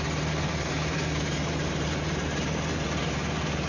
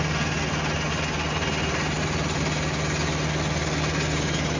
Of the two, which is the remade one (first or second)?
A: first